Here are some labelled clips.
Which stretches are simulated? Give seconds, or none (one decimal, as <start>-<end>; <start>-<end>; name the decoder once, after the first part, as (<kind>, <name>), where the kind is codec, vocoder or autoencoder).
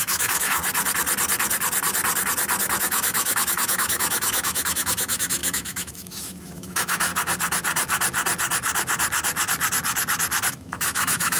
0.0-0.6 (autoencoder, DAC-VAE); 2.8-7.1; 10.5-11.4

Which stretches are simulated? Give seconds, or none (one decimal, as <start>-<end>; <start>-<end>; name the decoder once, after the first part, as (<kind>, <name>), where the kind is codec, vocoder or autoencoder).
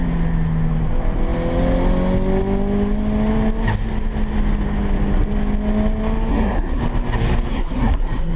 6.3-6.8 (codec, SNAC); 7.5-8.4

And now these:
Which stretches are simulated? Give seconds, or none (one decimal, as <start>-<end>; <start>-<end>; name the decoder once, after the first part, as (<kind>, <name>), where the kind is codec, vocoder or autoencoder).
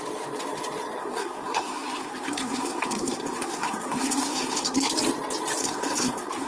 1.0-4.9 (codec, SNAC); 5.6-6.5